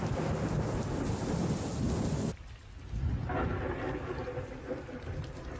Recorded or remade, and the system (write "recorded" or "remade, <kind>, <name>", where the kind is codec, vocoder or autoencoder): recorded